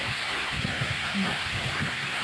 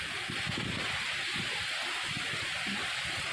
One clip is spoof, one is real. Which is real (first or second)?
second